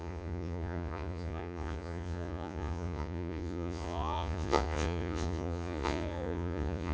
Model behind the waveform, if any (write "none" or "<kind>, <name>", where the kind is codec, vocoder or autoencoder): vocoder, Vocos